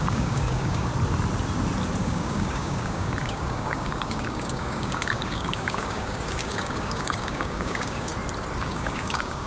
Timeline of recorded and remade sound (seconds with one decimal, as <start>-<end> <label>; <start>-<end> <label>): 0.0-0.9 remade; 0.9-2.0 recorded; 2.0-8.1 remade; 8.1-8.6 recorded; 8.6-9.5 remade